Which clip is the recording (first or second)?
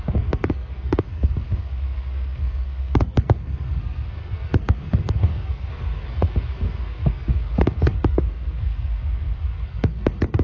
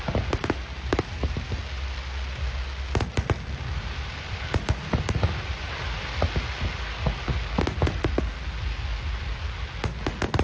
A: second